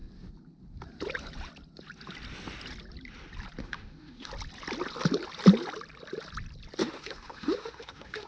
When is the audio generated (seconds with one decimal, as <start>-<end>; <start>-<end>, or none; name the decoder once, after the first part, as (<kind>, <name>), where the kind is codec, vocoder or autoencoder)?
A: 3.6-4.3 (autoencoder, DAC-VAE); 6.8-8.3